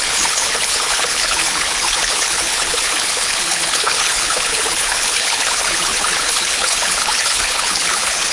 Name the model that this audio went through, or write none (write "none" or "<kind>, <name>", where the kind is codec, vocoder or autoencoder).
codec, HILCodec